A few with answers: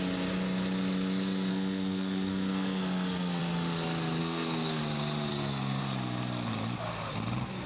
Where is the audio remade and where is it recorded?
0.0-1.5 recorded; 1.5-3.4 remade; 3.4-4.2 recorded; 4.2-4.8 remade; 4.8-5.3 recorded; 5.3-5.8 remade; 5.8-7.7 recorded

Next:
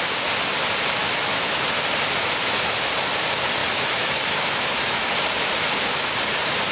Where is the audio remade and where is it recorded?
0.0-1.0 recorded; 1.0-1.6 remade; 1.6-3.6 recorded; 3.6-5.0 remade; 5.0-6.7 recorded

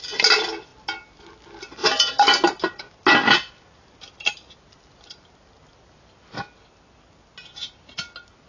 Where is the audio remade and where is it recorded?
0.0-8.5 recorded

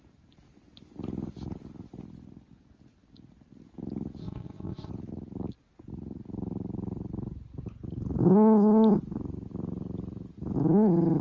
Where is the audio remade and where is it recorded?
0.0-4.2 recorded; 4.2-4.9 remade; 4.9-11.2 recorded

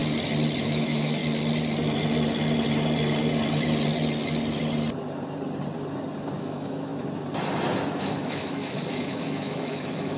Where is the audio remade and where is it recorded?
0.0-0.6 recorded; 0.6-1.2 remade; 1.2-6.4 recorded; 6.4-6.9 remade; 6.9-8.0 recorded; 8.0-10.2 remade